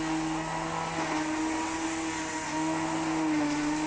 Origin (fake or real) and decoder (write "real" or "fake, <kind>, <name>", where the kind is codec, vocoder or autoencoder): real